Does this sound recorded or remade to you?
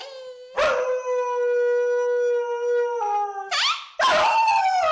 recorded